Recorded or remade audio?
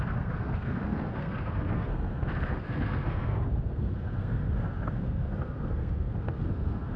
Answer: remade